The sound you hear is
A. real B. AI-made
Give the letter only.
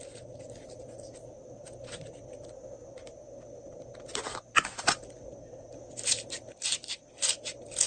A